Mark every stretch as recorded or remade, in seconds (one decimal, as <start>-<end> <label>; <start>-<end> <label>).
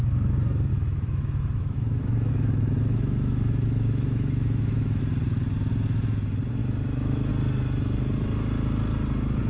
0.0-0.7 recorded; 0.7-5.0 remade; 5.0-6.6 recorded; 6.6-7.3 remade; 7.3-9.5 recorded